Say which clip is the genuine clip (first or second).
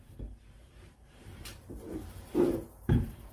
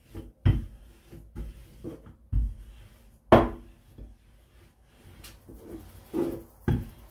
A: second